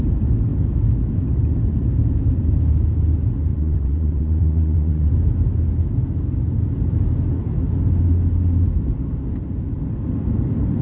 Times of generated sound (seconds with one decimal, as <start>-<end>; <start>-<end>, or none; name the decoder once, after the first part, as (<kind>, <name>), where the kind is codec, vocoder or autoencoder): 3.5-5.1 (vocoder, WaveNeXt)